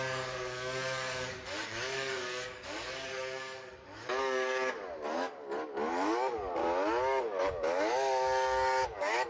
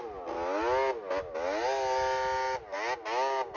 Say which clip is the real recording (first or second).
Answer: second